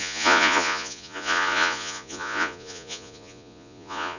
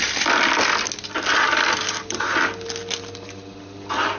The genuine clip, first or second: second